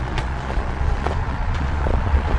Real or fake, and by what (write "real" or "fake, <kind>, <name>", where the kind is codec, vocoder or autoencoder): fake, vocoder, Vocos